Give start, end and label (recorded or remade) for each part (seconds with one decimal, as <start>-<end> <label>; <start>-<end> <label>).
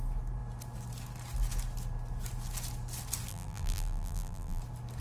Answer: 0.0-3.3 recorded; 3.3-4.6 remade; 4.6-5.0 recorded